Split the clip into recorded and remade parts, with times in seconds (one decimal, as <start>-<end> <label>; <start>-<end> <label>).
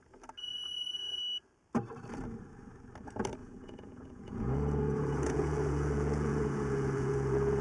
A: 0.0-0.4 recorded; 0.4-1.2 remade; 1.2-3.4 recorded; 3.4-7.6 remade